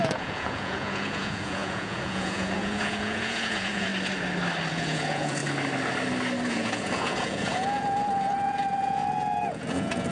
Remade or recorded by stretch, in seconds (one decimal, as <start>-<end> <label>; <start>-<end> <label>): 0.0-3.9 remade; 3.9-4.7 recorded; 4.7-5.4 remade; 5.4-6.5 recorded; 6.5-10.1 remade